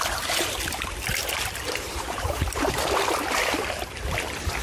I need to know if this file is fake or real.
fake